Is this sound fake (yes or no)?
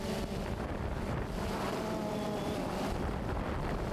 yes